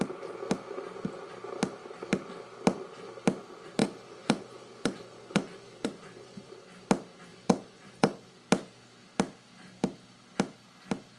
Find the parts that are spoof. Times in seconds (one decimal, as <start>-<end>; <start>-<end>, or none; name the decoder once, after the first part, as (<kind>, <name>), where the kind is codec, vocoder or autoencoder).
3.8-6.5 (vocoder, Vocos); 7.3-8.3